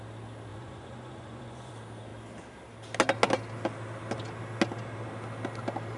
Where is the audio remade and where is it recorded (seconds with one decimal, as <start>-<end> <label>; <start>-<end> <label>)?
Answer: 0.0-0.5 recorded; 0.5-1.7 remade; 1.7-6.0 recorded